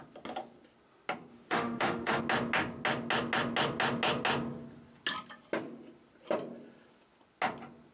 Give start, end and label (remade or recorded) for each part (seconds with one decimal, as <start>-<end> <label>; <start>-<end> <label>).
0.0-1.3 recorded; 1.3-2.2 remade; 2.2-7.9 recorded